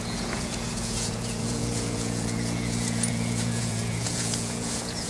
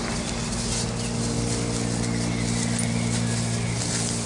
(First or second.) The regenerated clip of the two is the first